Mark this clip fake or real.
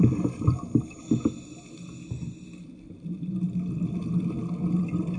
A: real